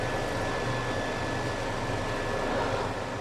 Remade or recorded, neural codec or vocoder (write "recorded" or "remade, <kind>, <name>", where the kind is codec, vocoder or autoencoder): recorded